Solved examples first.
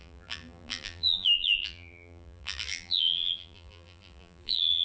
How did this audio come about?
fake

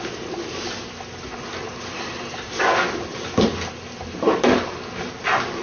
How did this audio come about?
real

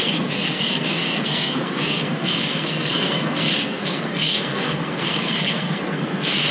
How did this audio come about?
fake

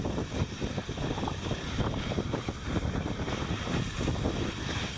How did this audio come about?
real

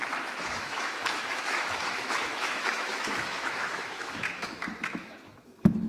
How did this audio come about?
fake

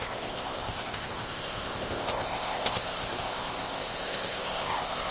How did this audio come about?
fake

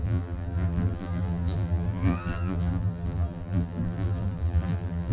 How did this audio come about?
fake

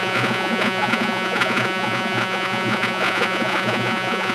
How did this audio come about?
fake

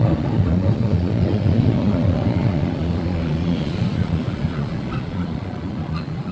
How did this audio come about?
fake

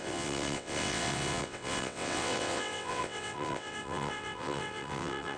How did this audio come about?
fake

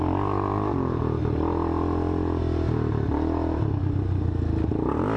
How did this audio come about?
real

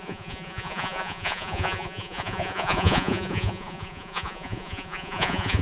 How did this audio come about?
fake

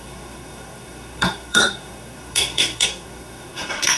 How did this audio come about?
fake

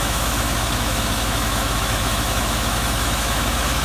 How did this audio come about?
fake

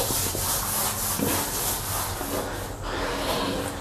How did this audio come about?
real